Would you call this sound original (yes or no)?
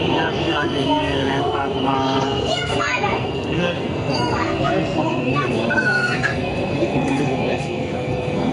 no